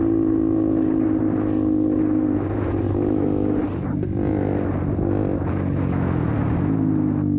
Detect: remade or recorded recorded